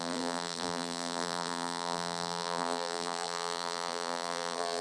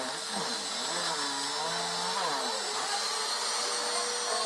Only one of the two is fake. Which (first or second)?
first